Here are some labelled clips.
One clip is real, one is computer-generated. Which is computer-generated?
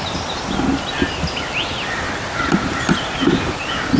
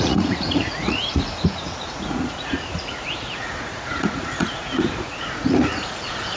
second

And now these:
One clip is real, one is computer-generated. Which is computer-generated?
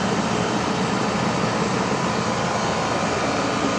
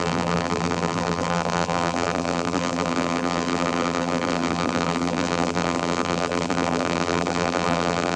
second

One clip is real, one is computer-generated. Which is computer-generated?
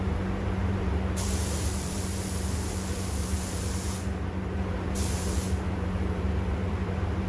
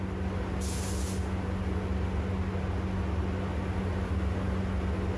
first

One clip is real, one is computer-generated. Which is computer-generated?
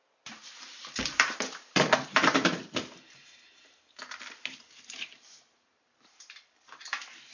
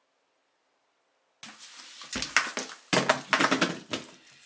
first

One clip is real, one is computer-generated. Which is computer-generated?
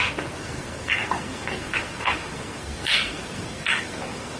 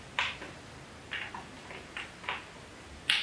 first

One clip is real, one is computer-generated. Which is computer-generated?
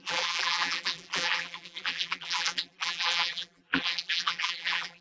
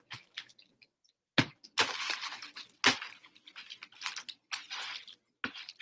first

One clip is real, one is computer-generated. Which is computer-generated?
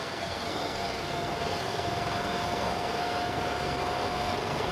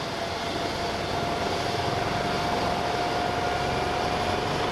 first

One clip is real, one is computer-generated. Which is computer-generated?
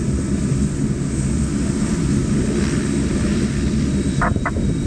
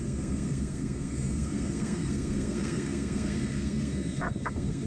second